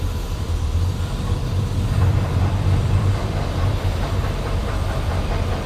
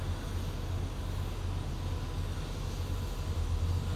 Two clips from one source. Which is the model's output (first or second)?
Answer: first